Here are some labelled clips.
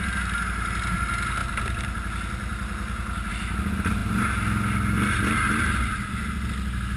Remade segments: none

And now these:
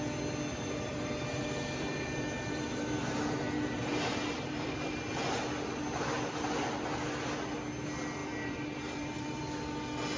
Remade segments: 0.5-5.2 (vocoder, BigVGAN v2); 8.2-9.4

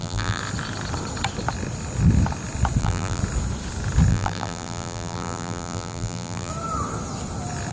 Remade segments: 0.0-0.4 (vocoder, BigVGAN v2); 2.8-3.2; 4.1-6.5

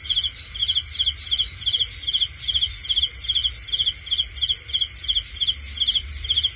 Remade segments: 0.0-0.6 (vocoder, BigVGAN v2); 3.0-3.4; 5.8-6.6

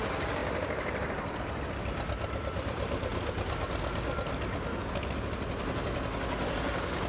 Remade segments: 0.4-1.4 (vocoder, BigVGAN v2)

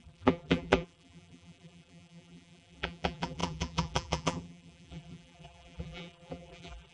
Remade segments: 0.0-6.9 (vocoder, BigVGAN v2)

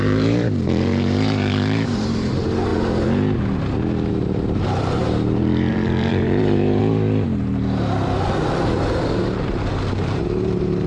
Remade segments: 0.0-2.7 (vocoder, BigVGAN v2); 4.1-6.8; 9.9-10.9